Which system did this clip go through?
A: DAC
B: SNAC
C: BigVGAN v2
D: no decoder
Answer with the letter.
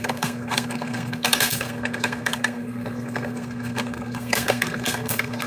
B